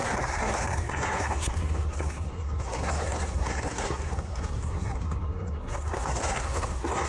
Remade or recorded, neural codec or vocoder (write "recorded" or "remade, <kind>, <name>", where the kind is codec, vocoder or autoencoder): remade, codec, SNAC